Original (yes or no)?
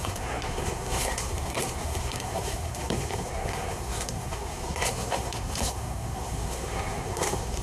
no